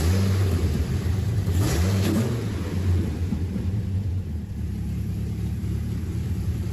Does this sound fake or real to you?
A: fake